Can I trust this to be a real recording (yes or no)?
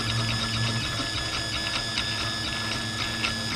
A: yes